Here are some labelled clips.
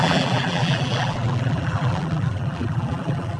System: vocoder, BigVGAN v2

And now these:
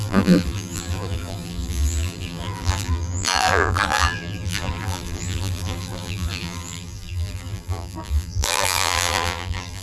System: vocoder, BigVGAN v2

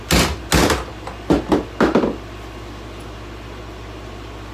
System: none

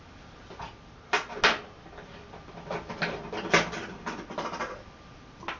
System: none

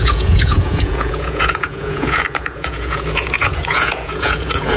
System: vocoder, Vocos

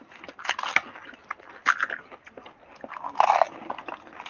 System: none